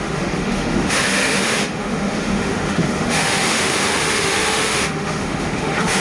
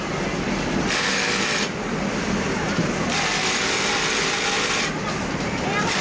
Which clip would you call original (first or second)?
second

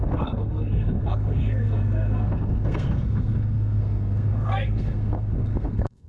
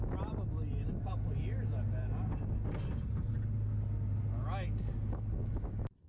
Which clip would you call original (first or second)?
second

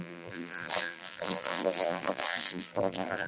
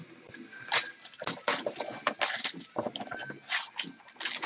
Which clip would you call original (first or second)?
second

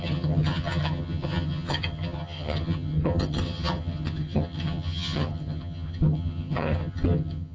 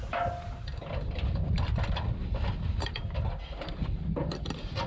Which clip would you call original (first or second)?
second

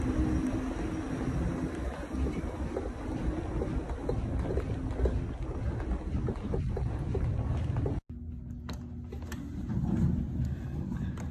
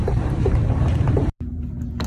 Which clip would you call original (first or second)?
first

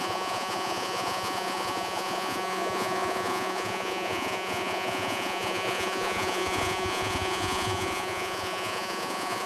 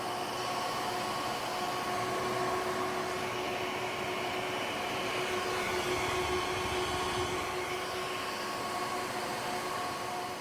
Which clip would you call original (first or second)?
second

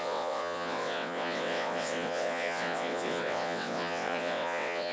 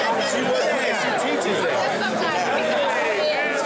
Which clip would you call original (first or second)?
second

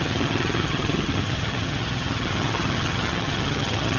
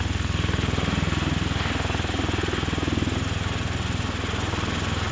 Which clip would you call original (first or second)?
second